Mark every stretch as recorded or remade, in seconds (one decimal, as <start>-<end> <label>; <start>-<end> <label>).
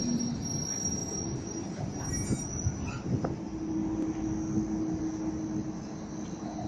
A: 0.0-6.7 recorded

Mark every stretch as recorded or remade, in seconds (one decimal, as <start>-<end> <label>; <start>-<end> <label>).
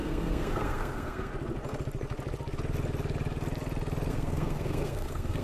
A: 0.0-1.3 remade; 1.3-4.1 recorded; 4.1-5.4 remade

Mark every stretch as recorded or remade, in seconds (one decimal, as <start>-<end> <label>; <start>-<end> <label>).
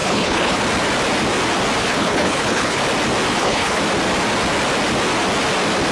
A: 0.0-0.6 remade; 0.6-1.8 recorded; 1.8-2.8 remade; 2.8-3.3 recorded; 3.3-3.8 remade; 3.8-5.9 recorded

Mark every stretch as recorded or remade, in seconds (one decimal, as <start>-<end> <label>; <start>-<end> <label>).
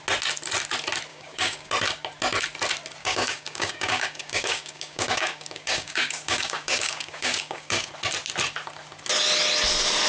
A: 0.0-1.1 recorded; 1.1-1.7 remade; 1.7-3.0 recorded; 3.0-7.9 remade; 7.9-10.1 recorded